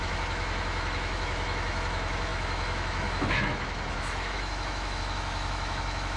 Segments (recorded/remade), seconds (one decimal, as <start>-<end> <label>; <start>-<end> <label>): 0.0-6.2 remade